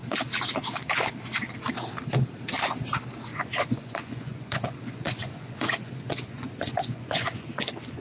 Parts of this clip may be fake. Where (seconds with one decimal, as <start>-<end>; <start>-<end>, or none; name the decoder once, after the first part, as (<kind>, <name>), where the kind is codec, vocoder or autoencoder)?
3.3-8.0 (vocoder, Vocos)